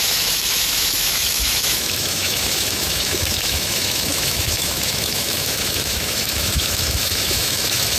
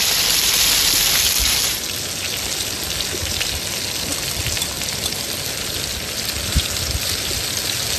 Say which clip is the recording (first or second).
second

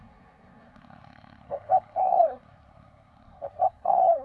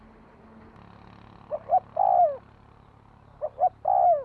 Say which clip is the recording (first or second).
second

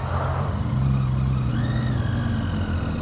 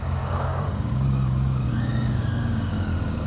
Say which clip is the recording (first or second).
first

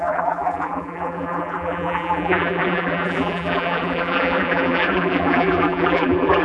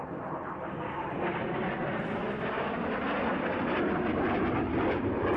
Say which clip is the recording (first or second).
second